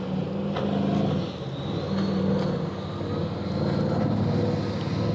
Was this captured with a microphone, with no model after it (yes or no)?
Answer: yes